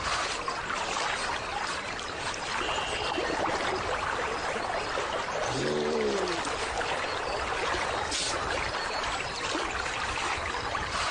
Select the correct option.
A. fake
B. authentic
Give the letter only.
B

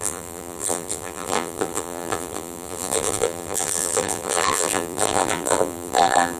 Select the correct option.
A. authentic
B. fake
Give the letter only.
B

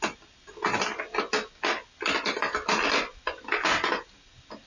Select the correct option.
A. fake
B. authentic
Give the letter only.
B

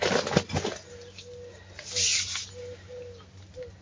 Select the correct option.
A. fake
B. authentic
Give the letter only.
B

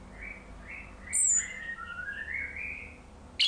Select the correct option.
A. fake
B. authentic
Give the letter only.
B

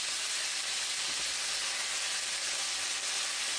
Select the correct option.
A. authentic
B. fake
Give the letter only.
A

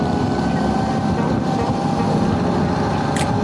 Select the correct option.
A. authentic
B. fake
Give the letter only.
A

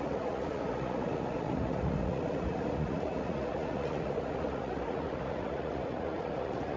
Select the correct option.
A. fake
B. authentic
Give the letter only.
A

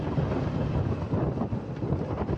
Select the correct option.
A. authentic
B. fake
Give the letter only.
A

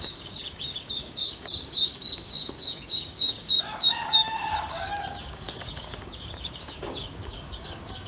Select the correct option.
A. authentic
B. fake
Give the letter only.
B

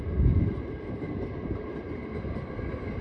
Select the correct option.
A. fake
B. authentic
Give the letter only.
B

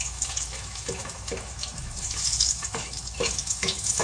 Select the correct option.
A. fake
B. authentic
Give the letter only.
A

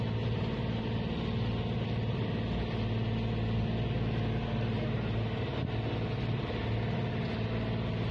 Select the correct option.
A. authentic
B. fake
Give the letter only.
A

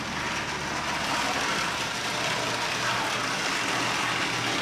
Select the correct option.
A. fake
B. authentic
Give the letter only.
B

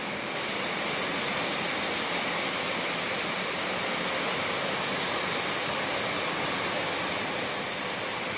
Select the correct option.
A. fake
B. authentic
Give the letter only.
B